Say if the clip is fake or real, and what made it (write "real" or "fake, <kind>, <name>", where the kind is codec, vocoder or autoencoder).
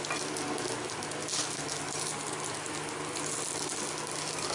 real